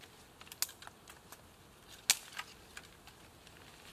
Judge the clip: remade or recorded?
recorded